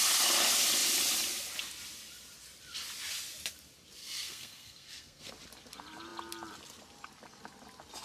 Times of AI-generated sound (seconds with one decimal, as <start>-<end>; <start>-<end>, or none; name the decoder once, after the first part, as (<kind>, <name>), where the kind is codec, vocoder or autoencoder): 4.0-5.3 (codec, SNAC)